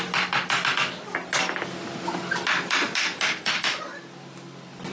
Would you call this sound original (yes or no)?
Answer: yes